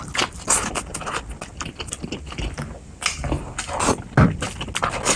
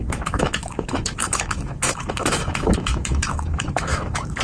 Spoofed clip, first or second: second